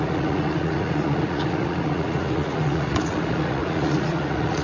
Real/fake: fake